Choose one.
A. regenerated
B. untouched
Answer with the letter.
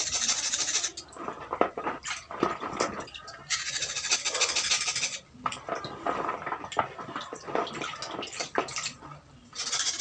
B